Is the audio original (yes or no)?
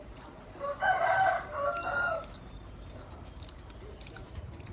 no